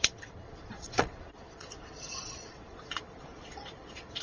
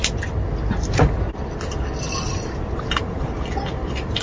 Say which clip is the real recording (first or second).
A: second